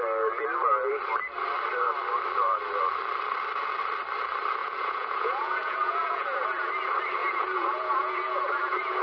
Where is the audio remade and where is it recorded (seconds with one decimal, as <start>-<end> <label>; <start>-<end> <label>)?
0.0-4.6 recorded; 4.6-6.7 remade; 6.7-7.2 recorded; 7.2-9.0 remade